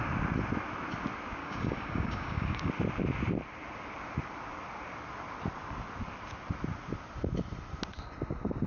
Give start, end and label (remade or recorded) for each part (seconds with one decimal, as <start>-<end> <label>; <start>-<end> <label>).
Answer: 0.0-1.4 recorded; 1.4-2.7 remade; 2.7-8.7 recorded